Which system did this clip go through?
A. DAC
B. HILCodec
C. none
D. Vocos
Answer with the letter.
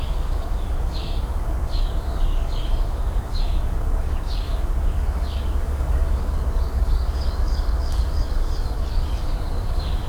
A